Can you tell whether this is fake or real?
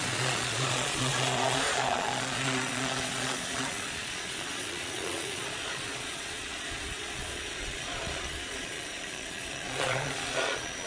fake